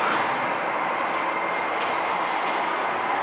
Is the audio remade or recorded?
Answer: recorded